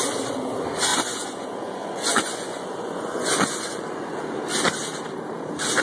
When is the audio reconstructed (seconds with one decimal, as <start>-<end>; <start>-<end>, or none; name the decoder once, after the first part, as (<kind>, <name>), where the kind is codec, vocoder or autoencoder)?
0.9-4.4 (vocoder, Vocos)